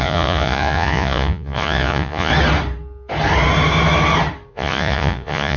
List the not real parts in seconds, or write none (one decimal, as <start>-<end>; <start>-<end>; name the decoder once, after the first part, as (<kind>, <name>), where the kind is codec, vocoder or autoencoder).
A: 0.0-2.3 (vocoder, Vocos); 4.5-5.6